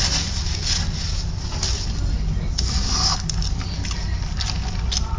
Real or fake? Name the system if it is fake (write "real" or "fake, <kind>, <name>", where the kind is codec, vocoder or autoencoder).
real